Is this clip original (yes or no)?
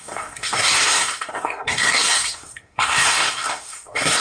no